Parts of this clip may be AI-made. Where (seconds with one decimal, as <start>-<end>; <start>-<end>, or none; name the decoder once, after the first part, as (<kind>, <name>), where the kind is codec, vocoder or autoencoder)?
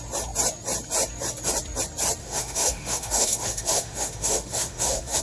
2.2-5.2 (autoencoder, DAC-VAE)